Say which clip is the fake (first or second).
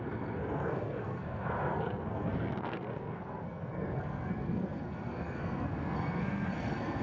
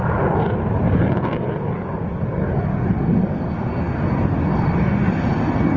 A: first